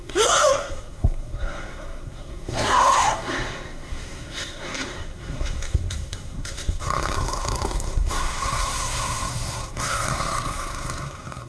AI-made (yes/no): yes